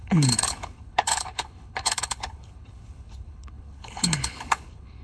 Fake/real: fake